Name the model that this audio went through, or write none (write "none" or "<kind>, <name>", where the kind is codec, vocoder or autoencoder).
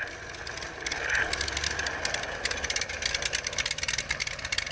none